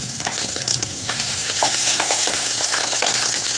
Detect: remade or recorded remade